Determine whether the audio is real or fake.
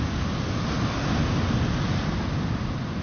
real